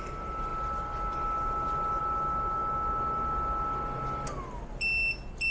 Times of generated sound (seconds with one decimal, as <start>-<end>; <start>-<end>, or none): none